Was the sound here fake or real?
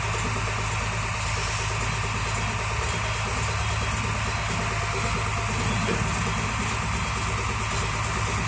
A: real